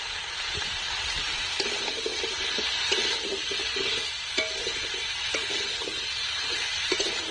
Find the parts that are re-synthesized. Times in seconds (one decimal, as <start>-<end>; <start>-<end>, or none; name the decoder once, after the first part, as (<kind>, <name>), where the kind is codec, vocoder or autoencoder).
none